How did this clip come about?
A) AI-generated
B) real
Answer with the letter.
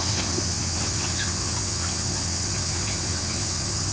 A